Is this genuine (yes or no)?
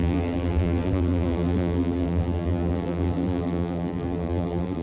no